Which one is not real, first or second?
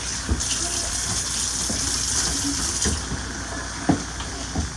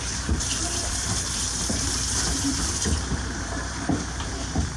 second